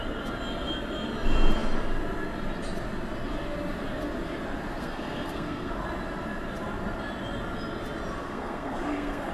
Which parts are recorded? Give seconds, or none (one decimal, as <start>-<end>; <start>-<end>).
0.0-4.8; 5.7-8.2